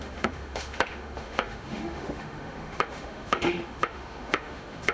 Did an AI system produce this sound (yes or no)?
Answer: yes